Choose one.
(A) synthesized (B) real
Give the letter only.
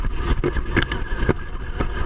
B